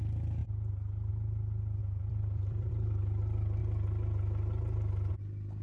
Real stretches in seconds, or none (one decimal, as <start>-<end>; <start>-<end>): 0.0-1.8; 2.7-5.6